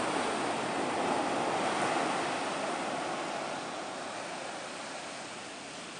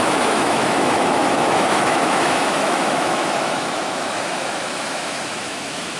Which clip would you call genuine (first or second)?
first